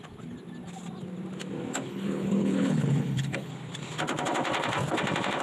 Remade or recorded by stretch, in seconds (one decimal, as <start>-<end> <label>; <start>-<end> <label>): 0.0-1.9 recorded; 1.9-3.5 remade; 3.5-5.4 recorded